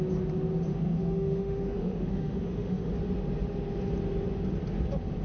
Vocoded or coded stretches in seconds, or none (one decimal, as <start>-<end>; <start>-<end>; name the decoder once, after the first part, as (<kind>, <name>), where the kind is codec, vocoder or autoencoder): 0.7-2.9 (autoencoder, DAC-VAE)